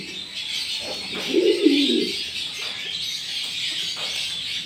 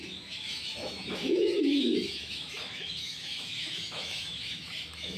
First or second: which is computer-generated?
second